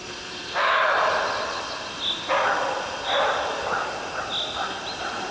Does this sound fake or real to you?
real